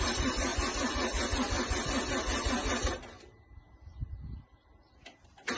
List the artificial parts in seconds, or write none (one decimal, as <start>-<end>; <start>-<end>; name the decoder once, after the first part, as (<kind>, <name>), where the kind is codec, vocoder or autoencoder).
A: none